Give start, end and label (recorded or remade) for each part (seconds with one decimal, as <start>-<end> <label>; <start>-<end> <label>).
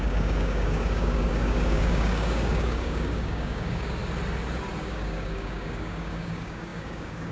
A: 0.0-4.0 remade; 4.0-4.8 recorded; 4.8-7.3 remade